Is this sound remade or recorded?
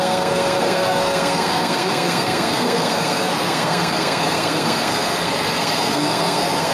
remade